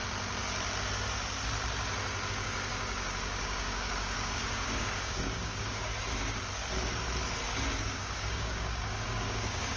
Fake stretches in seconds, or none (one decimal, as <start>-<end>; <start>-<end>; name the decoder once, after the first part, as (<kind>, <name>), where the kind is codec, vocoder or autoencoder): 2.3-5.9 (codec, DAC); 7.8-9.8